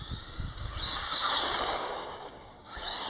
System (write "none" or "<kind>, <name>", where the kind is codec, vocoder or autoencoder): codec, DAC